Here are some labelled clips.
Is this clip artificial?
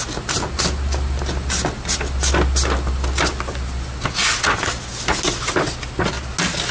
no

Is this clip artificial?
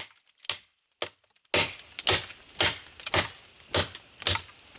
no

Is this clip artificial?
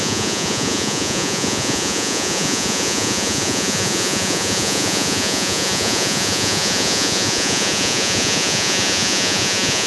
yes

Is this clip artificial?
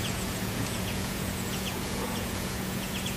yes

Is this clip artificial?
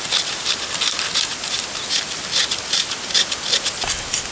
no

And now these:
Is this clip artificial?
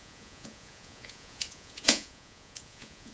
yes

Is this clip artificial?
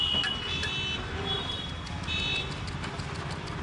no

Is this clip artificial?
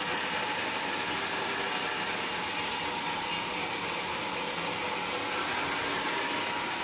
no